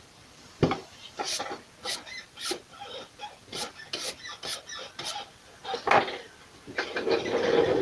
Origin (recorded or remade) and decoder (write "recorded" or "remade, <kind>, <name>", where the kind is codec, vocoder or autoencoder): recorded